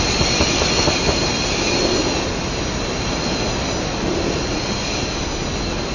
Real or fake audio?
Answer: real